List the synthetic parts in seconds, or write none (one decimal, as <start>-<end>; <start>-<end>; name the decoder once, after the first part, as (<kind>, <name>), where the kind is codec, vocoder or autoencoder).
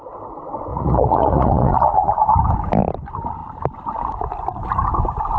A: 0.7-2.4 (vocoder, Vocos)